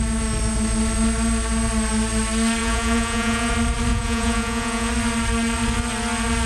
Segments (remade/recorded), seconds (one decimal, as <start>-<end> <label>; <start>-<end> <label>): 0.0-2.6 recorded; 2.6-3.5 remade; 3.5-3.9 recorded; 3.9-4.9 remade; 4.9-6.5 recorded